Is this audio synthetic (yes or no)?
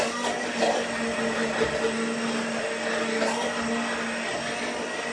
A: no